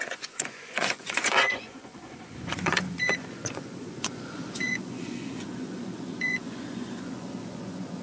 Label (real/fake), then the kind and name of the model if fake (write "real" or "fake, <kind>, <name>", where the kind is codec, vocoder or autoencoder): fake, vocoder, Vocos